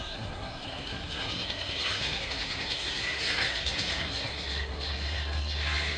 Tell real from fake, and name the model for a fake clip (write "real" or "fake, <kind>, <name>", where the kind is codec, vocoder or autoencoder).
fake, codec, SNAC